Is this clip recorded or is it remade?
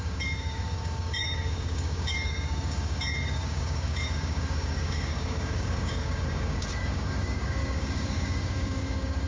remade